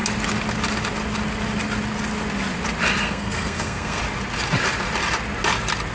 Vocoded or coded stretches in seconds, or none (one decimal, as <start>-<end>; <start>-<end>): 3.0-4.0